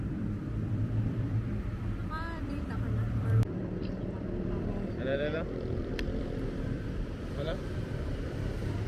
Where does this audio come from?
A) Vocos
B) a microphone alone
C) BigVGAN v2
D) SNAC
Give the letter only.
C